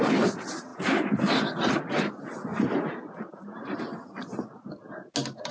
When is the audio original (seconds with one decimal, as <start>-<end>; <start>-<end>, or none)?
0.0-2.5; 4.8-5.5